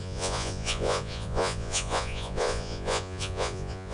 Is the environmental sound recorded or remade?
remade